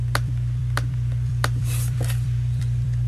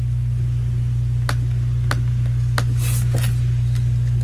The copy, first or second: first